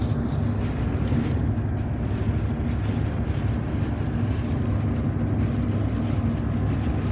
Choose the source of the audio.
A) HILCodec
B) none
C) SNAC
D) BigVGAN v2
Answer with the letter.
B